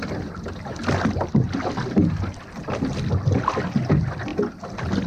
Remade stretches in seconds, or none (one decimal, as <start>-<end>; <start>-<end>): none